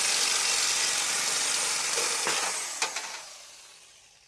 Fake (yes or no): no